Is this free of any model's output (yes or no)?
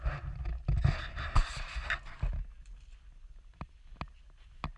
yes